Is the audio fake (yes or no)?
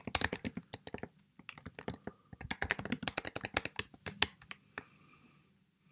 no